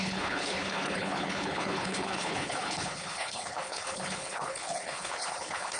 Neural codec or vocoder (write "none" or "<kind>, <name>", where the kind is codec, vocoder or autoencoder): codec, HILCodec